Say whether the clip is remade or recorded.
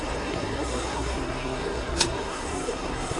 remade